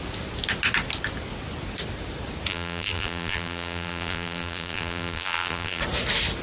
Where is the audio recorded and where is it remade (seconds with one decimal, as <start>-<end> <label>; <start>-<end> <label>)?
0.0-2.5 recorded; 2.5-5.8 remade; 5.8-6.4 recorded